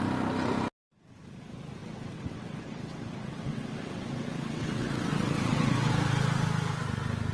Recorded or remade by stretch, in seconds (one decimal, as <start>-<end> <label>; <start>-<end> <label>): 0.0-1.8 recorded; 1.8-5.9 remade; 5.9-7.3 recorded